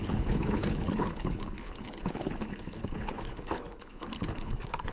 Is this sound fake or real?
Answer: fake